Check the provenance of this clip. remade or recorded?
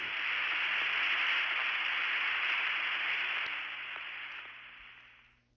recorded